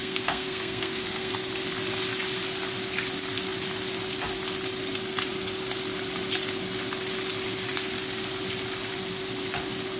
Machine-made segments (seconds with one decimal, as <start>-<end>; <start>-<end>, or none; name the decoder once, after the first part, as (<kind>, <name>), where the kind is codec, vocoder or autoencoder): 0.0-1.3 (codec, SNAC)